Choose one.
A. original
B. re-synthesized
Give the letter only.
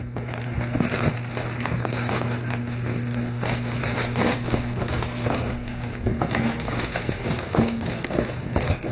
B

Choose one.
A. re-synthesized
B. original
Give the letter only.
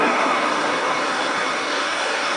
A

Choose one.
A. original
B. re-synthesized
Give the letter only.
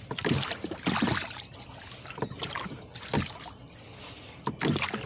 A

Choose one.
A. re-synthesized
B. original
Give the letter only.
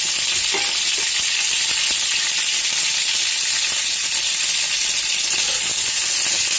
B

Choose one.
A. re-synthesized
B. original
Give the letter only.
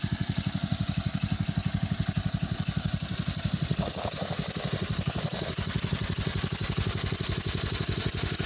B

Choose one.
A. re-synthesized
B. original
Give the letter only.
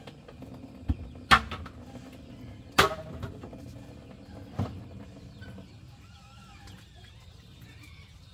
B